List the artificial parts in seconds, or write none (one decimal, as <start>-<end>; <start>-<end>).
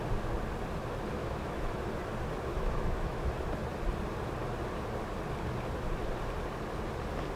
1.2-1.8; 2.5-3.3